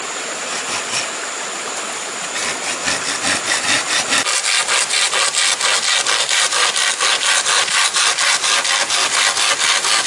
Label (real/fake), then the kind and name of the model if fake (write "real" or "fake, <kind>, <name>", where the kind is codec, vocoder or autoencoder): real